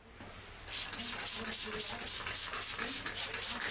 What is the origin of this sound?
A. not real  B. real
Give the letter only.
B